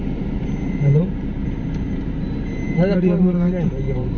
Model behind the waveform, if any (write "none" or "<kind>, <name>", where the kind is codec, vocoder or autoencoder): vocoder, BigVGAN v2